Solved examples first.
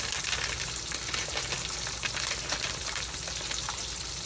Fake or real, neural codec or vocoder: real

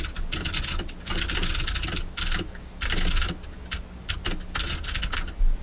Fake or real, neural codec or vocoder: real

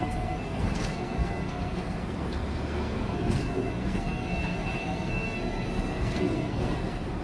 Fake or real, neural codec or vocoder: fake, codec, SNAC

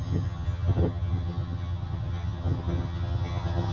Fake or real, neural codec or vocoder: fake, vocoder, HiFi-GAN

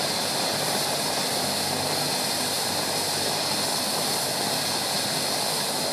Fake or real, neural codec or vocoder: real